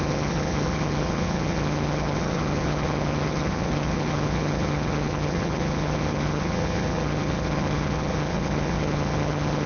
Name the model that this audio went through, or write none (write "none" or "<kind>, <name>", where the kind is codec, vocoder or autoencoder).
vocoder, HiFi-GAN